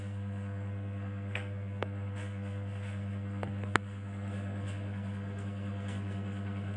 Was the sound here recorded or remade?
remade